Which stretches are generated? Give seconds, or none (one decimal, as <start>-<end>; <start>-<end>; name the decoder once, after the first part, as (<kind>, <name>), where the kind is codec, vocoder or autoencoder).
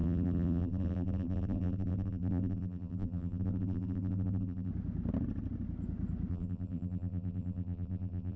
0.0-4.7 (vocoder, BigVGAN v2); 6.3-8.4